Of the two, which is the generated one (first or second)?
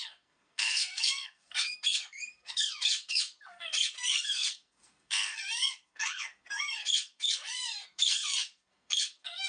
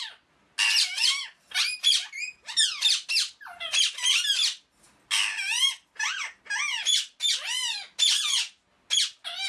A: first